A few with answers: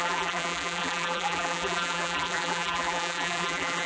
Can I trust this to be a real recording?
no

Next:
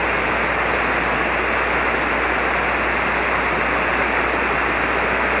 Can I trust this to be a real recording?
yes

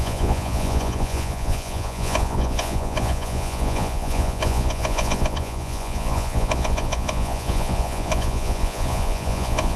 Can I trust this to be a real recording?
no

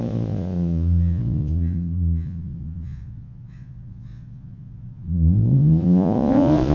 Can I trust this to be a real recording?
no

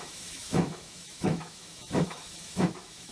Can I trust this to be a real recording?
no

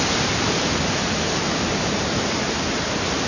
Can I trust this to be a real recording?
no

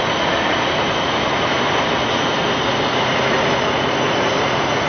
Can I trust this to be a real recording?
no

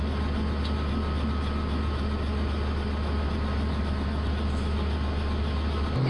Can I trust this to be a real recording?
yes